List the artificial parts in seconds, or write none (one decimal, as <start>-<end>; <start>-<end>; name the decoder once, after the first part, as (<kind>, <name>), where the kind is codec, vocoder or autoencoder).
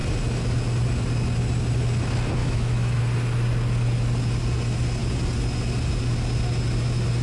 2.4-3.0 (autoencoder, DAC-VAE)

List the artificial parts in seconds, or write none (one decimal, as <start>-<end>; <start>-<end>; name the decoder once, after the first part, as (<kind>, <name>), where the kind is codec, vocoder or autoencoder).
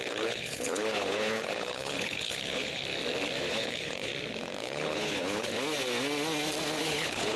0.0-2.8 (codec, HILCodec); 3.5-4.1; 4.6-5.5; 6.8-7.4